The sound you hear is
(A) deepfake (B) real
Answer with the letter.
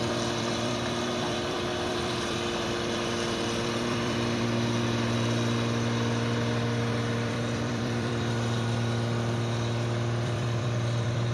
A